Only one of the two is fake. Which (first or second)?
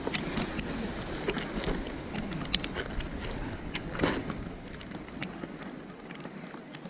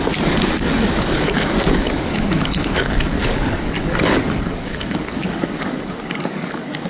second